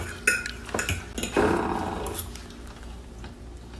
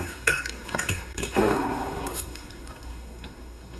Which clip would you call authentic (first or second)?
first